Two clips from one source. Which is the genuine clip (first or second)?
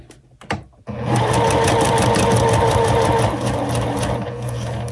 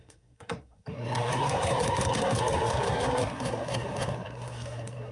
first